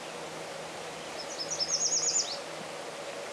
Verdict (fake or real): real